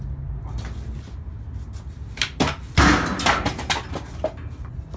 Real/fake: real